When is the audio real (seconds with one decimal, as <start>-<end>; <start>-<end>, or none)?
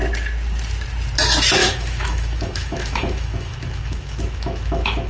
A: 0.0-1.6